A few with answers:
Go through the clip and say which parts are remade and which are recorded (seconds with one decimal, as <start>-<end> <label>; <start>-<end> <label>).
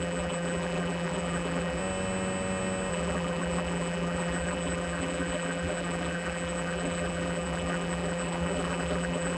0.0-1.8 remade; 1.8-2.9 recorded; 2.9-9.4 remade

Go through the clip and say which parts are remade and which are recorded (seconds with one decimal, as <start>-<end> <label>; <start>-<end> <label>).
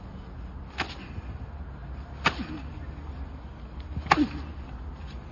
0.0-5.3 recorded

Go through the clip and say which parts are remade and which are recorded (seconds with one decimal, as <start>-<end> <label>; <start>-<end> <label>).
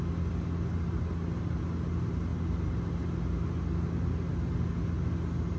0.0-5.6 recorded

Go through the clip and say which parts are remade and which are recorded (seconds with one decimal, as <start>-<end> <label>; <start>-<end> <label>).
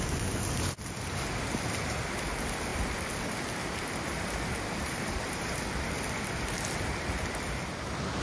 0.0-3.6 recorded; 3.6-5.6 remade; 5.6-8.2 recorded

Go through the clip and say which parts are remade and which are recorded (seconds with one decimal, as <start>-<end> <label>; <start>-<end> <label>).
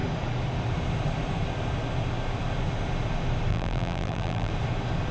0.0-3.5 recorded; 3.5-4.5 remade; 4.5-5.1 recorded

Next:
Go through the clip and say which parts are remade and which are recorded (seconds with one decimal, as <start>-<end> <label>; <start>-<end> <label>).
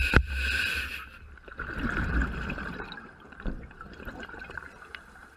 0.0-2.2 recorded; 2.2-3.7 remade; 3.7-5.4 recorded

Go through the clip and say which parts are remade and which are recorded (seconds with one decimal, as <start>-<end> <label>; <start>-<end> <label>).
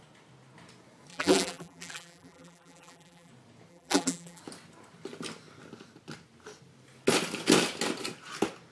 0.0-1.1 recorded; 1.1-3.3 remade; 3.3-3.7 recorded; 3.7-4.4 remade; 4.4-8.7 recorded